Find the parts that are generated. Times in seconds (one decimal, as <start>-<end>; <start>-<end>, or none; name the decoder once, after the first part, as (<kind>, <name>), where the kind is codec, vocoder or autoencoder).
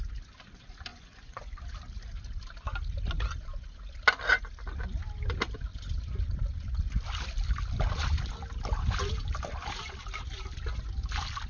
0.9-1.6 (vocoder, Vocos)